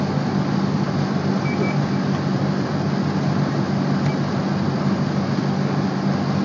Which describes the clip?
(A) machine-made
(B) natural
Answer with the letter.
B